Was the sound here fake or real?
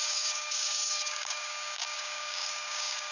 fake